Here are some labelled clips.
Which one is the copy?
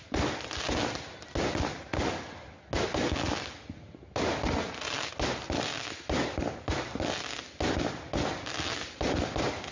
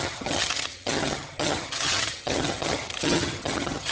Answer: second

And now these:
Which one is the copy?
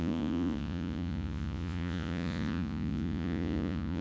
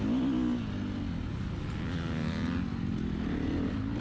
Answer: first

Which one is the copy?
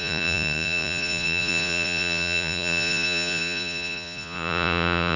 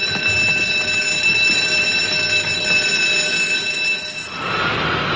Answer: first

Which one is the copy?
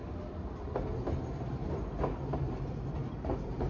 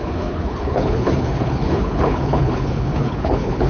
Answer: second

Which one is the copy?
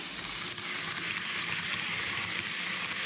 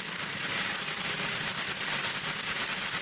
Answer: second